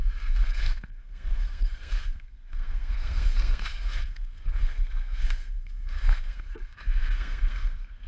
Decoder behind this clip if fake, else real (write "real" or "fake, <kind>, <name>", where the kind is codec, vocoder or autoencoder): fake, codec, SNAC